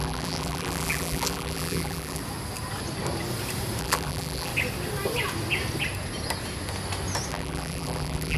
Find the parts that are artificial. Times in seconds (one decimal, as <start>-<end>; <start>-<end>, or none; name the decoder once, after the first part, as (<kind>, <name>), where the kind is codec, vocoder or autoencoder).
0.0-2.2 (vocoder, BigVGAN v2); 3.8-4.5; 7.3-8.4